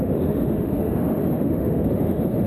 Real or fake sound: fake